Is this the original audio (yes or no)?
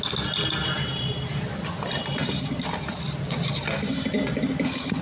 yes